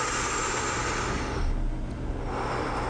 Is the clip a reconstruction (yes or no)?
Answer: no